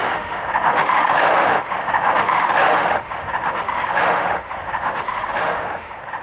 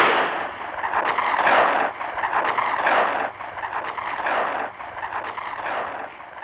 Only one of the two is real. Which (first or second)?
second